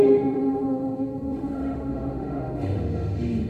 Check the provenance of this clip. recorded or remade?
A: remade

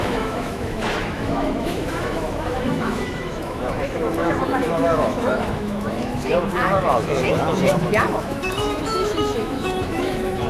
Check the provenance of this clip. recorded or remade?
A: remade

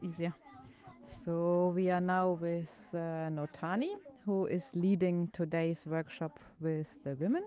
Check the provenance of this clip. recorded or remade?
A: remade